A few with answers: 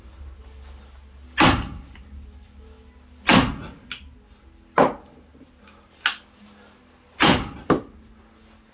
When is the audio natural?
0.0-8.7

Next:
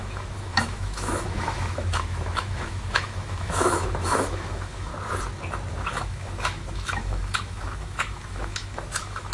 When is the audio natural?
4.9-5.7

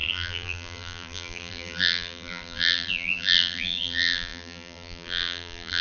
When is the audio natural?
none